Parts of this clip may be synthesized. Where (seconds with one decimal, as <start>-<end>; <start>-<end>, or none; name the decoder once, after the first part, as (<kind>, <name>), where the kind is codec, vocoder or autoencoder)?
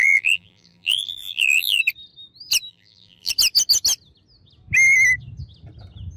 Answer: 0.0-1.8 (vocoder, BigVGAN v2); 2.7-3.3